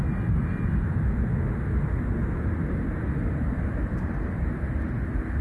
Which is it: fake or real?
real